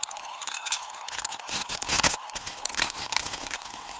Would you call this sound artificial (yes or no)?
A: yes